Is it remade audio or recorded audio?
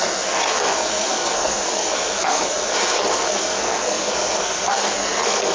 remade